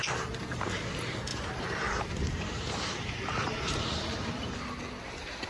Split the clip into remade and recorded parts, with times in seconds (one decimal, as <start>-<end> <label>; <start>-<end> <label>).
0.0-1.3 recorded; 1.3-4.6 remade; 4.6-5.5 recorded